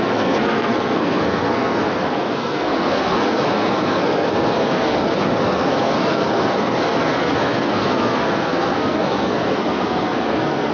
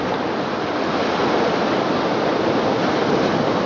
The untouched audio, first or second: second